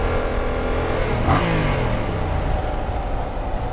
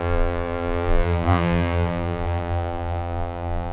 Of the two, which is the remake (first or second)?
second